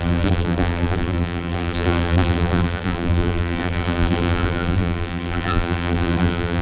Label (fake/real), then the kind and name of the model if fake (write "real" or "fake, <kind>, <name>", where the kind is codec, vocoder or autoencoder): fake, vocoder, BigVGAN v2